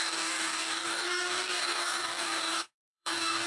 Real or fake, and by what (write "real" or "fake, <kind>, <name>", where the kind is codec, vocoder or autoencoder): fake, codec, DAC